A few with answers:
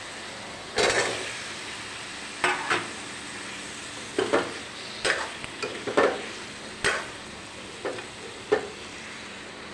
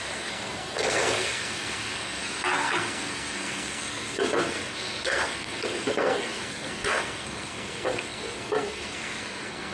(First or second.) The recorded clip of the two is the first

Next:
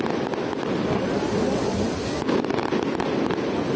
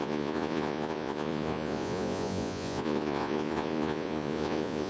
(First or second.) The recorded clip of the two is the first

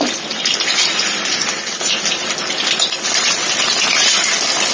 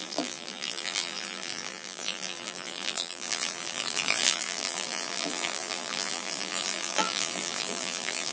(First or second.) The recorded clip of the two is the first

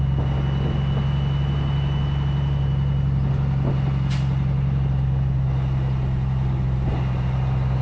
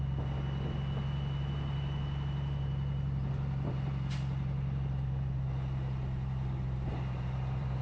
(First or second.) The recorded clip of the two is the first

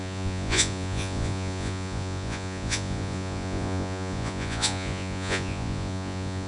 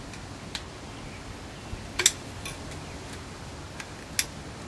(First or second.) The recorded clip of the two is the second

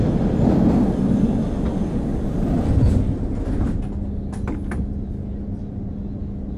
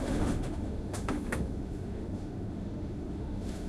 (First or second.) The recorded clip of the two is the first